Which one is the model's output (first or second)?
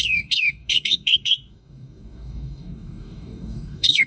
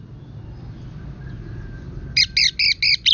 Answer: first